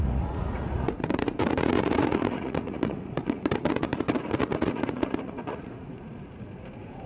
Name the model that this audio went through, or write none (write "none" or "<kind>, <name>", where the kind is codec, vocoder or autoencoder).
vocoder, Vocos